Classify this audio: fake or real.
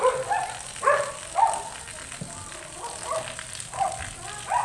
real